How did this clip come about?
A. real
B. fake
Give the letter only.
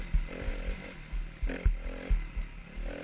A